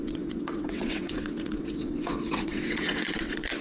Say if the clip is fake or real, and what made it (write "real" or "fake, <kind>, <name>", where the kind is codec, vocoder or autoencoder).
fake, vocoder, WaveNeXt